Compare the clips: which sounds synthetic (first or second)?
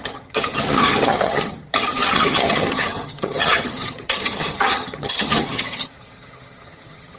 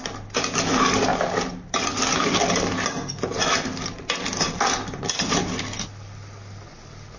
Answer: first